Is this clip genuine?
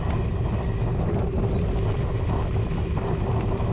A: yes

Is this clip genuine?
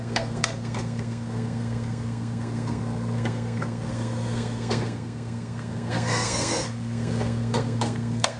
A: no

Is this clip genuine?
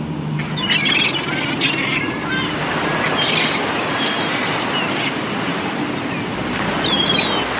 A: yes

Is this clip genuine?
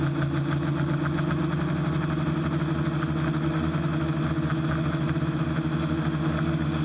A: yes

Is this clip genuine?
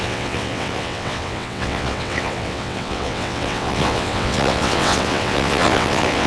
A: no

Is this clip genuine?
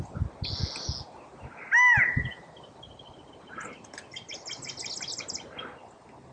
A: yes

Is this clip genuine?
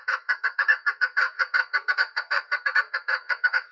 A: no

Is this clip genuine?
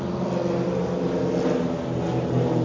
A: yes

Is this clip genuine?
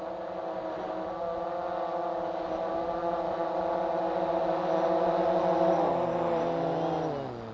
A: yes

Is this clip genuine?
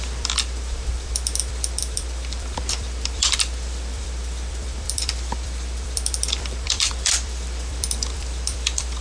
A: no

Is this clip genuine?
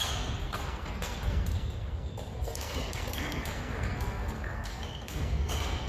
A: no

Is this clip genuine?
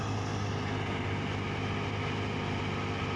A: yes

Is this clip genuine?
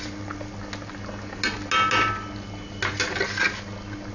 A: yes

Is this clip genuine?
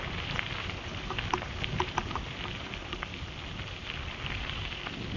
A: yes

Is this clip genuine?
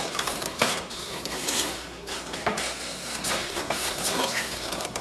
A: no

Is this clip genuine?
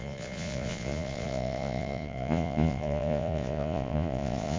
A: no